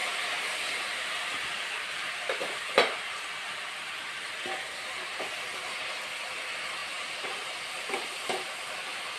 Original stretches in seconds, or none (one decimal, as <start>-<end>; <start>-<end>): 5.2-6.8; 8.7-9.2